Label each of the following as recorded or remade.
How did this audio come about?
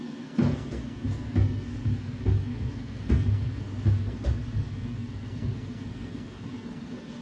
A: remade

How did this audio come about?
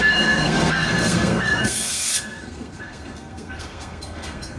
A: remade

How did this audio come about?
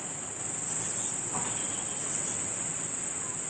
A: recorded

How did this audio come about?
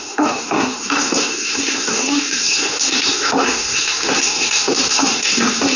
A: remade